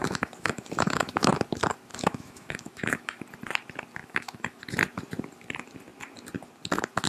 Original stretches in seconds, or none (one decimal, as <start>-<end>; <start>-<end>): 1.3-1.9; 3.2-4.0; 4.6-7.1